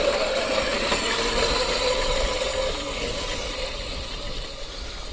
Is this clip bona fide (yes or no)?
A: yes